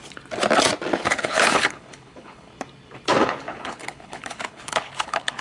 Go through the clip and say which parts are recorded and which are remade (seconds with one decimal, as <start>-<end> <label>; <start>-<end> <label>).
0.0-0.9 recorded; 0.9-2.5 remade; 2.5-3.2 recorded; 3.2-5.4 remade